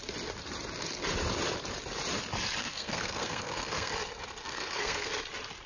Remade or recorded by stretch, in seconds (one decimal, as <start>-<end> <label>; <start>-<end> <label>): 0.0-2.6 recorded; 2.6-3.9 remade; 3.9-4.4 recorded; 4.4-5.1 remade; 5.1-5.7 recorded